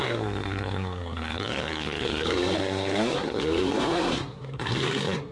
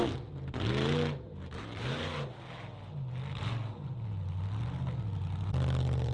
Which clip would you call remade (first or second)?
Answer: first